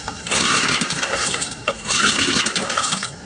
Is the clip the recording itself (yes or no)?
no